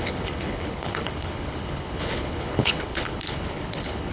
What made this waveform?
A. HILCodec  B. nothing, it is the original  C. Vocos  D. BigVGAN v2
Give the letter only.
A